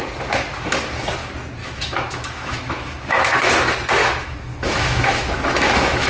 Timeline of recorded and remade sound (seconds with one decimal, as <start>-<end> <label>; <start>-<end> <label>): 0.0-1.6 recorded; 1.6-3.5 remade; 3.5-4.0 recorded; 4.0-6.1 remade